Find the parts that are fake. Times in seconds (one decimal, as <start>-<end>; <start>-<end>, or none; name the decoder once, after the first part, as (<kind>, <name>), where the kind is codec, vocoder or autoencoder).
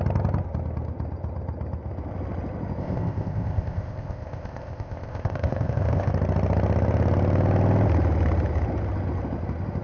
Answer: 2.8-6.1 (codec, ZipCodec)